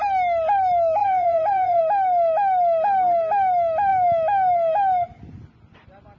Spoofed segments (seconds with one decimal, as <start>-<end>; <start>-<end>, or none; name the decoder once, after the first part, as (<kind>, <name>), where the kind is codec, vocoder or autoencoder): 1.0-1.8 (vocoder, Vocos)

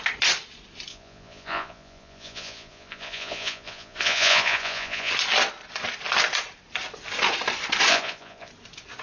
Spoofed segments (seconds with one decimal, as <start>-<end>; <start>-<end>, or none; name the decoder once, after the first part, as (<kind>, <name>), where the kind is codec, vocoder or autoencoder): 0.9-5.1 (vocoder, Vocos); 7.9-8.5

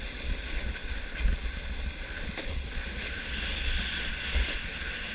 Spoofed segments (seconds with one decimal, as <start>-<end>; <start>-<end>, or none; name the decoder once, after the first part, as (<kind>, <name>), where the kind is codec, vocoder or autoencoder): none

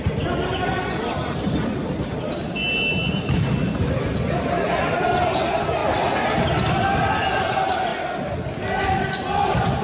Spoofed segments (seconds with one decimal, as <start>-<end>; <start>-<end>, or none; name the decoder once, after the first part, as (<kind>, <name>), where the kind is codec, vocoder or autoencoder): none